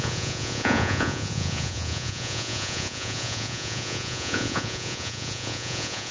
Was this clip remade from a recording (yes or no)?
yes